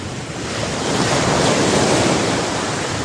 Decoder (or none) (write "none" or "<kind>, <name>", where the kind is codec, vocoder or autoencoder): none